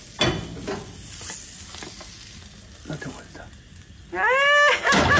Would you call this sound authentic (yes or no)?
yes